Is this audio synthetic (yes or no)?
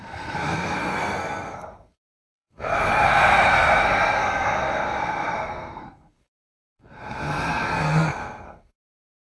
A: yes